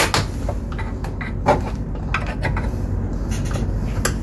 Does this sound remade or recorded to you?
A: recorded